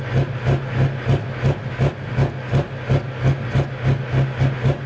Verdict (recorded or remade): recorded